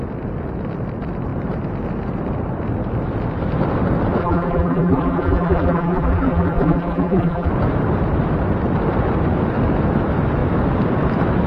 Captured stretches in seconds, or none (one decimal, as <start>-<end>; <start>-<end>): 0.0-4.2; 7.5-11.5